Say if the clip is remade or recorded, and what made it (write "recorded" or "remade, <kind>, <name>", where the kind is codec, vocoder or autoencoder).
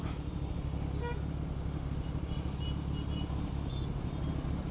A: recorded